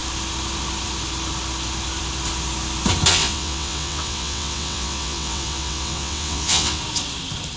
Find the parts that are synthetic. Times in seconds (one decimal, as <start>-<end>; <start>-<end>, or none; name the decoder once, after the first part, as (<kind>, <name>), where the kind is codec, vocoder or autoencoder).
3.1-6.8 (vocoder, WaveNeXt)